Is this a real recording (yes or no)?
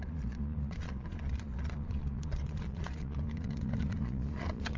no